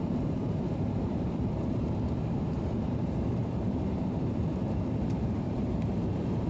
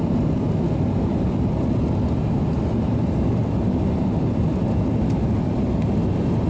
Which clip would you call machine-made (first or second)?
first